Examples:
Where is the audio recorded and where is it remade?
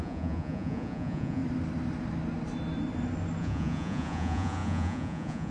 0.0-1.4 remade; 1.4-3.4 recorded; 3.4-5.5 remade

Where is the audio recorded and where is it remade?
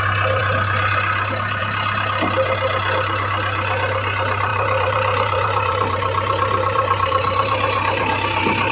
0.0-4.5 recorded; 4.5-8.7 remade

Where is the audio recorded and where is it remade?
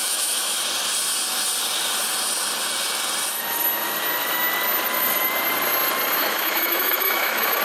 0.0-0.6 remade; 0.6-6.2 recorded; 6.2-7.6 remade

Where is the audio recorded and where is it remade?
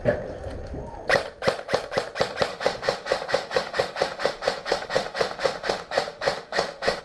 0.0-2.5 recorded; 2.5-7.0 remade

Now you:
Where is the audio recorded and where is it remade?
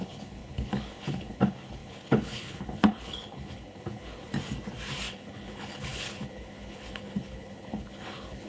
0.0-4.3 remade; 4.3-5.1 recorded; 5.1-8.5 remade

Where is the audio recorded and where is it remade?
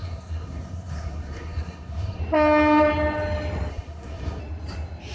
0.0-2.2 remade; 2.2-3.7 recorded; 3.7-4.4 remade; 4.4-5.1 recorded